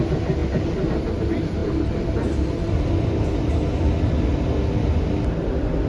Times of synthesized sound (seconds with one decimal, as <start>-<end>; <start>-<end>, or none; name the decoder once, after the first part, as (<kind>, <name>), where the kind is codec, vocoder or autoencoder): 1.6-2.8 (vocoder, BigVGAN v2)